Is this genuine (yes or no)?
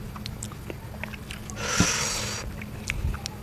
yes